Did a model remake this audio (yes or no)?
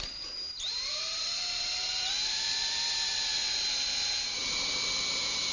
yes